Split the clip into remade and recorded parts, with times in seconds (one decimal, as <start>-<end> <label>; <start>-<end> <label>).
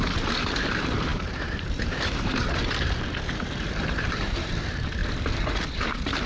0.0-5.0 remade; 5.0-6.3 recorded